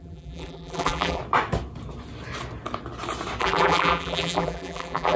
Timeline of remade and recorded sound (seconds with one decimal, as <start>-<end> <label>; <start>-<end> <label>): 0.0-1.2 remade; 1.2-3.4 recorded; 3.4-5.2 remade